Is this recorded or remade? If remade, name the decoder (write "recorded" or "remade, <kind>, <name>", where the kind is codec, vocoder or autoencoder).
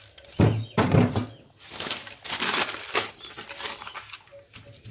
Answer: recorded